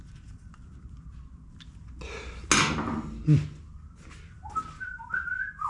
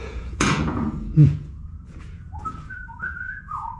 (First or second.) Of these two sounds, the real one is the first